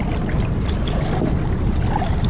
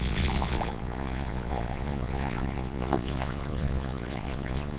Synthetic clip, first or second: second